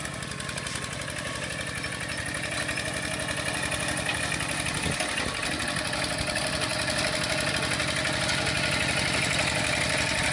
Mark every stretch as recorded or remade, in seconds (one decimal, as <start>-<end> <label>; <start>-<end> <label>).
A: 0.0-10.3 recorded